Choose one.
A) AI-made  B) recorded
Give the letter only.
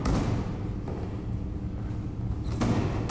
B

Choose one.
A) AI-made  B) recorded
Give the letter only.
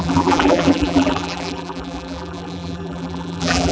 A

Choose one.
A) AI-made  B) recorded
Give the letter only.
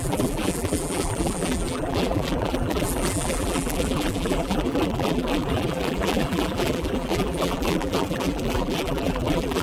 A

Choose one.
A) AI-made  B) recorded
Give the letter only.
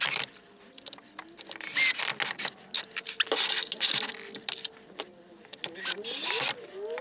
B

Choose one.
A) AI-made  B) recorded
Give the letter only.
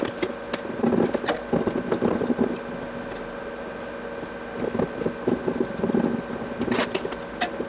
B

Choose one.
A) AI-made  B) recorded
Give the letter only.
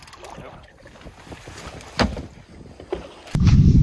B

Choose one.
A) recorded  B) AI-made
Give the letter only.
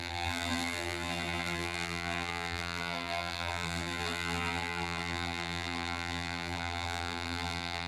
B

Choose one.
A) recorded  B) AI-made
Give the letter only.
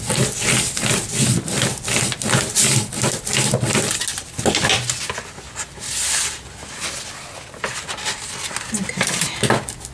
A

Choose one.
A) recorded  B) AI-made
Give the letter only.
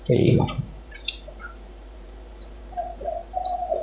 B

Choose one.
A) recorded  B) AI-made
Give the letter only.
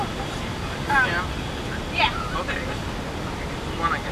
A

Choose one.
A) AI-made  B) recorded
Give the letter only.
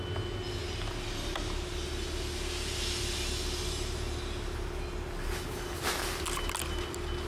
B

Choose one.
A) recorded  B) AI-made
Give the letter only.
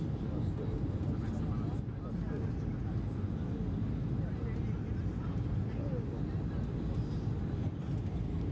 A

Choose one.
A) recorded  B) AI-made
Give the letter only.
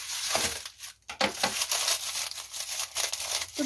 A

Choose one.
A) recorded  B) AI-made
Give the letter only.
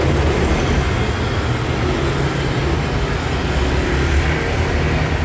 A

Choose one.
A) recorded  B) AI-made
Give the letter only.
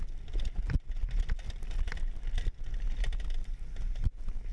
A